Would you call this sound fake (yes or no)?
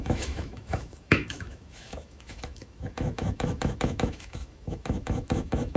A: yes